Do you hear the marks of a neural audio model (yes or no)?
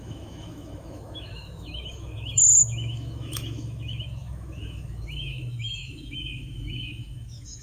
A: yes